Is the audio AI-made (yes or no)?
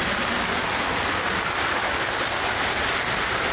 no